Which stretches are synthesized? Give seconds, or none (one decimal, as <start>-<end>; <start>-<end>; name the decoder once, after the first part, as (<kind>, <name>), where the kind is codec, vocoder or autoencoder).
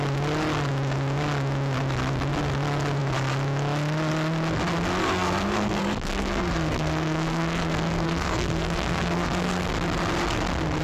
5.0-9.7 (codec, SNAC)